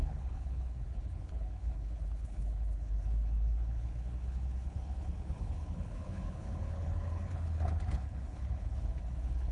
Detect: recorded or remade remade